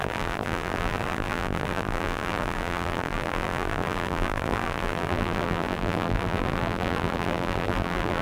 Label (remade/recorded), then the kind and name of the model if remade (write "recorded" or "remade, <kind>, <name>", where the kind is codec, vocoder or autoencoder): remade, vocoder, BigVGAN v2